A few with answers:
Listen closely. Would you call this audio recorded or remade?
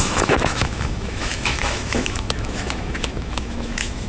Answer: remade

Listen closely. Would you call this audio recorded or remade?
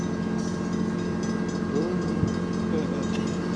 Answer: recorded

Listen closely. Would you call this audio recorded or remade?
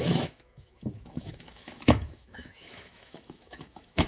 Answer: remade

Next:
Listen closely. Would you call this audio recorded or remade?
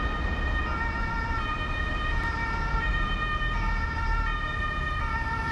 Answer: recorded